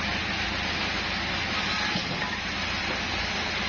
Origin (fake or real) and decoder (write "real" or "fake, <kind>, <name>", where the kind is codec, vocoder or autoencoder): real